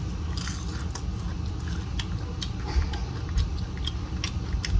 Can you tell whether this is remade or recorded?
recorded